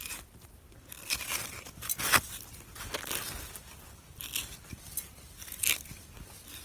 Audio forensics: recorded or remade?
recorded